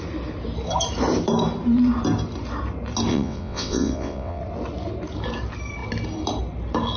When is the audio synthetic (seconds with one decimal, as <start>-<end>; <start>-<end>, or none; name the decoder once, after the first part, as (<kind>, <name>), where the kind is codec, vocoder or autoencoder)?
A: 3.1-4.4 (vocoder, WaveNeXt)